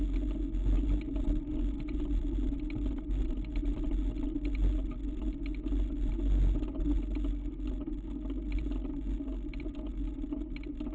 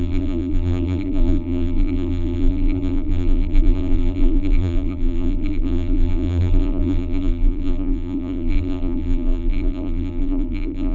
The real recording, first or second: first